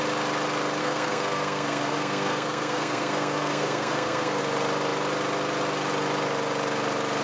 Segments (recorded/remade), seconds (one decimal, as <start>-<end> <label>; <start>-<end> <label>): 0.0-0.8 recorded; 0.8-4.4 remade; 4.4-7.2 recorded